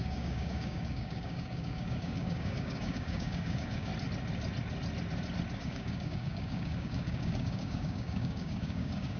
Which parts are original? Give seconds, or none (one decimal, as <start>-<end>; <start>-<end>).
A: 3.9-5.6